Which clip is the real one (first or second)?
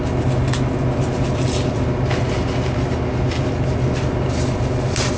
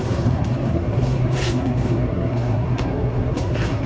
first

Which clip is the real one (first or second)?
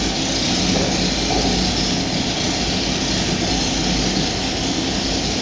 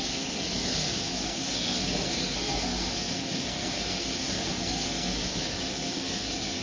first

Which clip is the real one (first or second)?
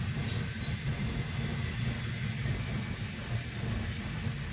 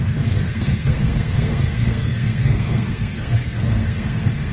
first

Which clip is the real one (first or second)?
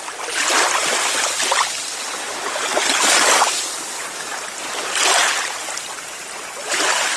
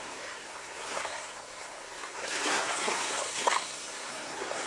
first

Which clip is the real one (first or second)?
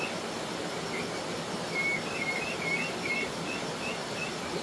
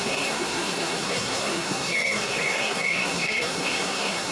first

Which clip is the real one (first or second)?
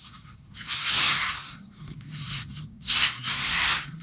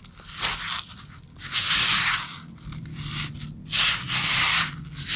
second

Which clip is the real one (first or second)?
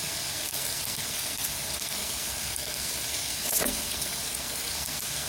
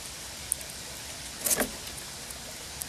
second